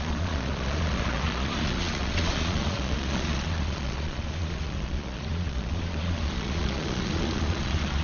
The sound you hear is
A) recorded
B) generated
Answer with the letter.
B